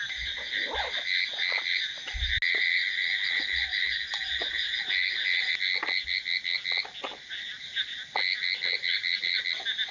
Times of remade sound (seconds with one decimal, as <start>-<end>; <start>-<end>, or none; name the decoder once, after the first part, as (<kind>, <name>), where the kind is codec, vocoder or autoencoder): none